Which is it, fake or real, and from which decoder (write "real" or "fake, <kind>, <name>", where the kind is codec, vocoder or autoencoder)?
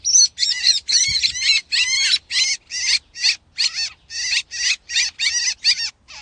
real